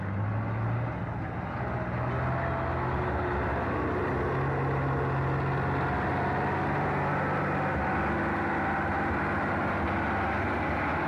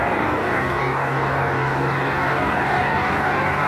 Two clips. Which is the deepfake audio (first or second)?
second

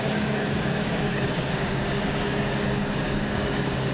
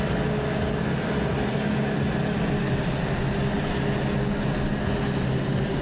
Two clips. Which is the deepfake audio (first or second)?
first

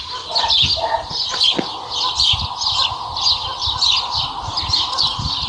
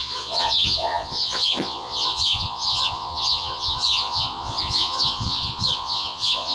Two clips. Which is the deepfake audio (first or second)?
second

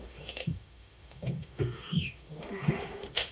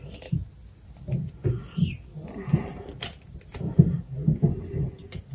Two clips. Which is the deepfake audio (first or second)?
first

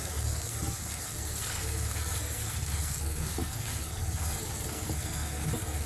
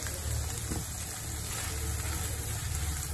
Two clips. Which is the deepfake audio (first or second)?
first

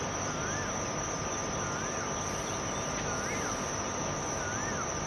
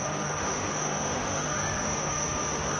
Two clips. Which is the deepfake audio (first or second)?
second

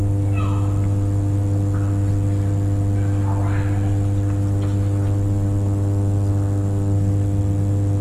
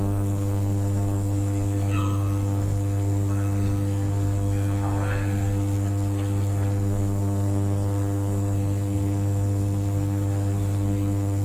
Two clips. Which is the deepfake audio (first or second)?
second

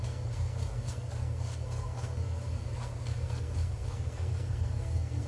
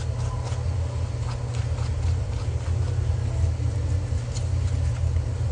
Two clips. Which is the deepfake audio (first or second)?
first